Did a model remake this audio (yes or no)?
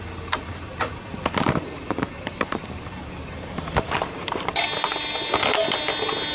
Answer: no